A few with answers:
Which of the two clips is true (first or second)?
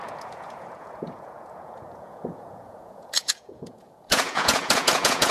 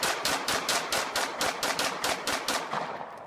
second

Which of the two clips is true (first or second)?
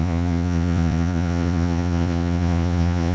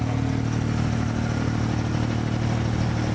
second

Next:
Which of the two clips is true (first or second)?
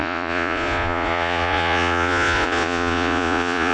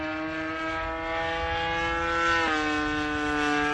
second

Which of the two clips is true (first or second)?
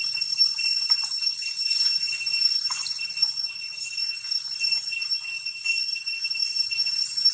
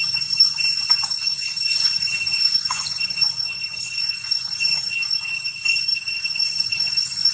first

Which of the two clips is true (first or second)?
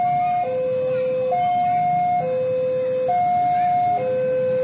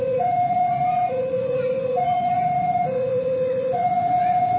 first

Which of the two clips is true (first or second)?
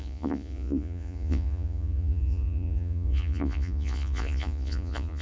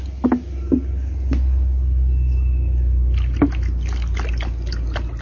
second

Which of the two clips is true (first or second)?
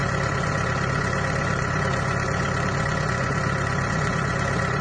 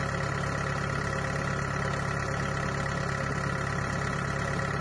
second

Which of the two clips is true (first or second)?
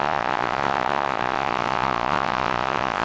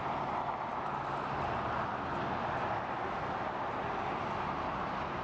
second